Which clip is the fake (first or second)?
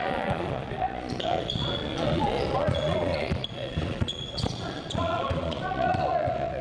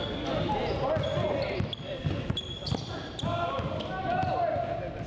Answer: first